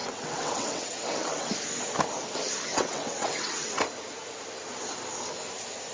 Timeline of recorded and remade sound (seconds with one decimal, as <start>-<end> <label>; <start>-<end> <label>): 0.0-1.5 remade; 1.5-2.7 recorded; 2.7-3.8 remade; 3.8-5.9 recorded